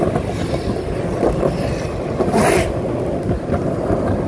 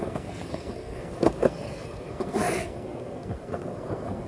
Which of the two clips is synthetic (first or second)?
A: second